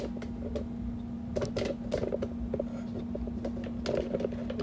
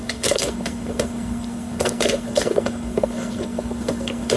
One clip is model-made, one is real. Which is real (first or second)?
first